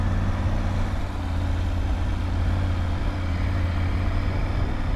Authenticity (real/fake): real